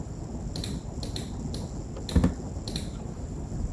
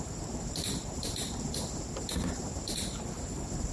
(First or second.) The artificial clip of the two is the second